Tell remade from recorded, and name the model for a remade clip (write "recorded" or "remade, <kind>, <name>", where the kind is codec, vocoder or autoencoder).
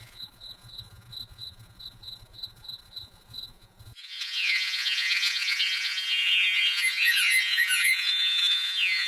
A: remade, vocoder, Vocos